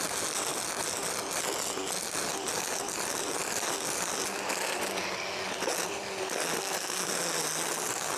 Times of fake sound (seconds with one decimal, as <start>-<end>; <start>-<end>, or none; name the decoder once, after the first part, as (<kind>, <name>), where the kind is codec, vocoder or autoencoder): none

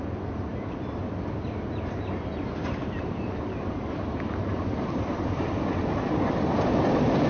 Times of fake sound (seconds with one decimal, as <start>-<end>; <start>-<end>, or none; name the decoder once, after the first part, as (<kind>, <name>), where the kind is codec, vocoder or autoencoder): 0.0-7.3 (vocoder, BigVGAN v2)

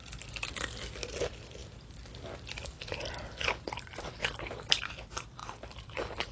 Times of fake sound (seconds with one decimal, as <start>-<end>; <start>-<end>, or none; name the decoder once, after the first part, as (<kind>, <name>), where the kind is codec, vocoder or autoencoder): 0.0-4.2 (vocoder, BigVGAN v2); 4.7-6.3